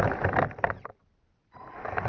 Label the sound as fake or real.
real